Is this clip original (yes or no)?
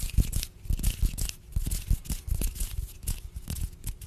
yes